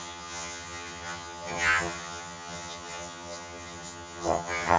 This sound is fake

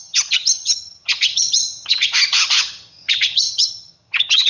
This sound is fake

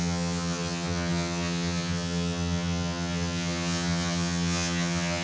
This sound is fake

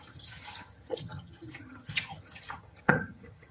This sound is fake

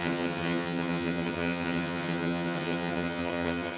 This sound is fake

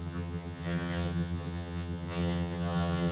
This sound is fake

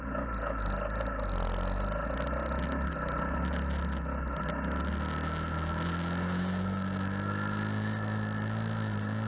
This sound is real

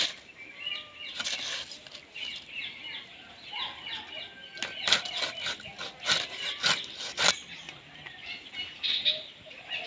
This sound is real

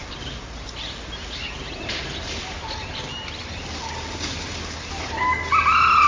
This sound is real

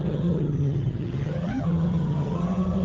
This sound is fake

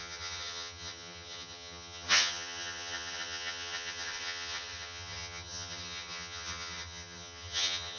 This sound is fake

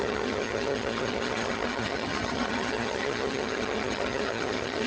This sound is fake